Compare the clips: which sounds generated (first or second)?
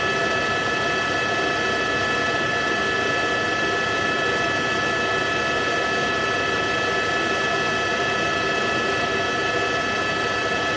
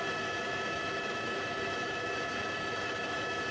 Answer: second